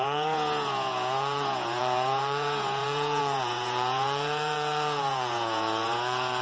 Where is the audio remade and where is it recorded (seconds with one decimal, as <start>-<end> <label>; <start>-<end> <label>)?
0.0-6.4 remade